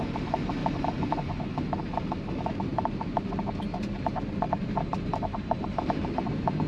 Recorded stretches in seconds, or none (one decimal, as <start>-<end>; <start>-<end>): 0.0-0.6; 1.4-2.7